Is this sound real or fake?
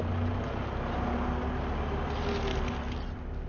real